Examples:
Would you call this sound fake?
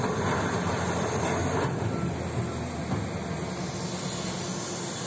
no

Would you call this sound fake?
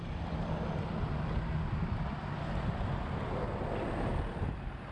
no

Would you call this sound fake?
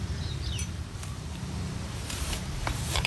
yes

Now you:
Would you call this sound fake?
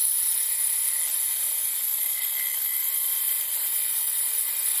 no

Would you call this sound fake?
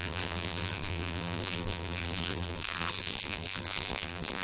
yes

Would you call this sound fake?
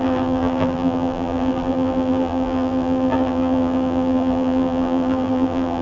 yes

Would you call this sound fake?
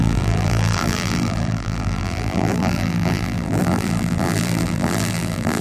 yes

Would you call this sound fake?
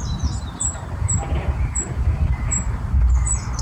yes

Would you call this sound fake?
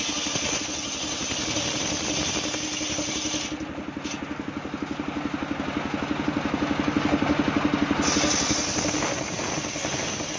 no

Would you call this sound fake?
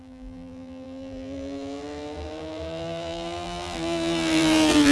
yes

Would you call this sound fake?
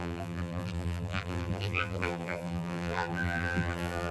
yes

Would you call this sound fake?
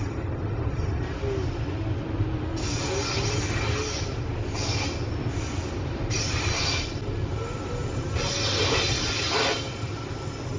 no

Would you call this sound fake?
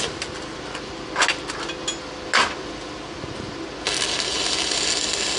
no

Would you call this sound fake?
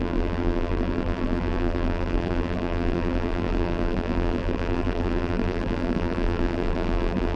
yes